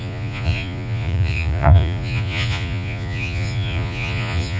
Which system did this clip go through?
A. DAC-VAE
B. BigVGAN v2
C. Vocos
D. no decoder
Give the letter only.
C